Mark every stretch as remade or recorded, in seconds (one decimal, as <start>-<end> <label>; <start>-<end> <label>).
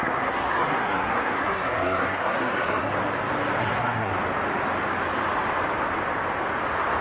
0.0-2.9 remade; 2.9-3.6 recorded; 3.6-4.1 remade; 4.1-7.0 recorded